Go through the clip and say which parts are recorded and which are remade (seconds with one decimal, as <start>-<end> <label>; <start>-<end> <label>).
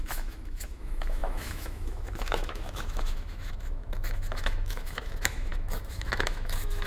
0.0-6.9 remade